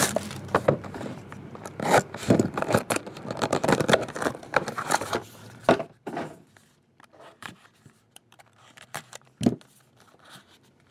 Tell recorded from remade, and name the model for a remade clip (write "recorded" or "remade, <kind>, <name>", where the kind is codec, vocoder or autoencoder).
remade, vocoder, BigVGAN v2